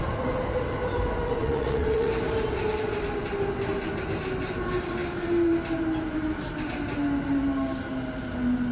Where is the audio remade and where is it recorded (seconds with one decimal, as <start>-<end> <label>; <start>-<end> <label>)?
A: 0.0-1.4 recorded; 1.4-2.1 remade; 2.1-8.7 recorded